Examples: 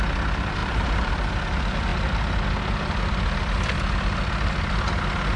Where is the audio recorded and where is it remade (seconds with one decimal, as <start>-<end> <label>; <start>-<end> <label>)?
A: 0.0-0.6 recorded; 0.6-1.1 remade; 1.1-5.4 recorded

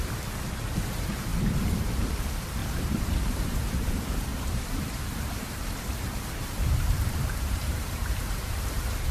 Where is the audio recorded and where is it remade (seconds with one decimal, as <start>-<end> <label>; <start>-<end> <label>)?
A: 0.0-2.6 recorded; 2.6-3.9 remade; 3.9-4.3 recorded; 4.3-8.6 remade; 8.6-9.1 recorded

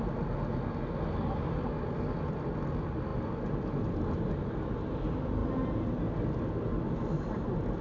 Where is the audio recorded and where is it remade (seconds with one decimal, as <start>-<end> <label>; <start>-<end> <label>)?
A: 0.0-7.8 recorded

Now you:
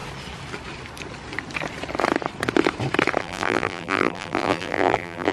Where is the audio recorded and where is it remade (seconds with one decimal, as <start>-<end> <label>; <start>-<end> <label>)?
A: 0.0-3.2 recorded; 3.2-5.3 remade

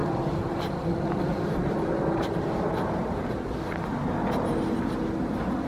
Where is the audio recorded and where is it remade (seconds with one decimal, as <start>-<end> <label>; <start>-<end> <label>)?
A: 0.0-3.2 remade; 3.2-5.7 recorded

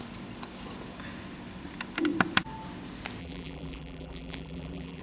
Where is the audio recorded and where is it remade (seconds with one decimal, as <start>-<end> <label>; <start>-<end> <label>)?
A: 0.0-3.2 recorded; 3.2-5.0 remade

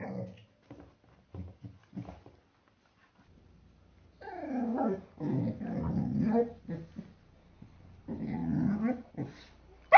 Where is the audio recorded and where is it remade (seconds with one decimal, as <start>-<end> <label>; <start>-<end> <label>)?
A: 0.0-8.4 recorded; 8.4-9.1 remade; 9.1-10.0 recorded